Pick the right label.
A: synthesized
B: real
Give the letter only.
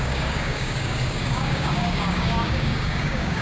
A